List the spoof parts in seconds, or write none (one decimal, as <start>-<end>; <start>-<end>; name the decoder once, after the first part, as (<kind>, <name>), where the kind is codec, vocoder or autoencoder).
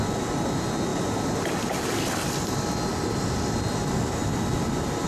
none